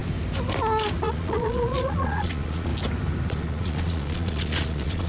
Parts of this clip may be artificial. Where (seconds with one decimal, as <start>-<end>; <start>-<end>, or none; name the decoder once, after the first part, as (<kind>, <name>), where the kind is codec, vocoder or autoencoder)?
1.0-2.7 (vocoder, Vocos); 3.3-5.1